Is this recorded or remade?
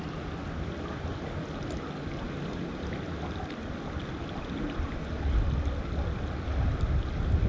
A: recorded